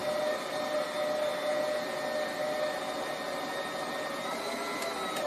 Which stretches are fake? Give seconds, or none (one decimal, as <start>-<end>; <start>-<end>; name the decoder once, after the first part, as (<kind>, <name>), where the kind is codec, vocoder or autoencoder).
none